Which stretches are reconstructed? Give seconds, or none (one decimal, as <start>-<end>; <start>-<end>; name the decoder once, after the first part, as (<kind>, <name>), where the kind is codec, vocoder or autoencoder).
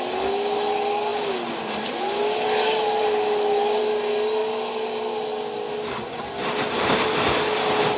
none